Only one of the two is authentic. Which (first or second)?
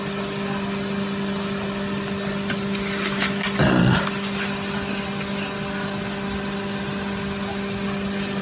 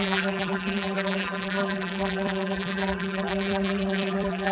first